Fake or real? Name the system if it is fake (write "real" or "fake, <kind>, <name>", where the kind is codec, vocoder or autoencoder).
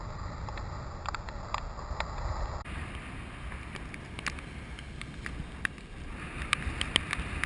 real